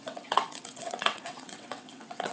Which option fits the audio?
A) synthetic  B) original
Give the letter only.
A